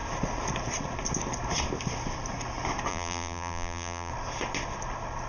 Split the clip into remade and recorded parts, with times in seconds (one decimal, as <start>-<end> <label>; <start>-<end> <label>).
0.0-2.9 recorded; 2.9-4.1 remade; 4.1-5.3 recorded